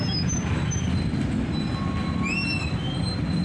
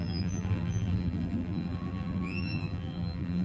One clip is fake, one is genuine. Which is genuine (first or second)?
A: first